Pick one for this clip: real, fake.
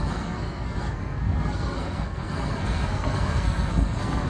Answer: fake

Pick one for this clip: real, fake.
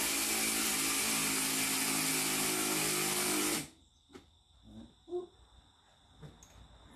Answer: real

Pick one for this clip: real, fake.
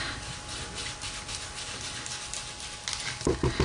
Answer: real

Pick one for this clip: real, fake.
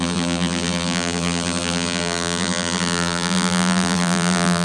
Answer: fake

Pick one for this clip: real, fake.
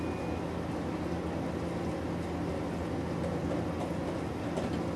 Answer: real